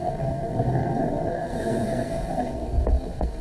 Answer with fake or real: fake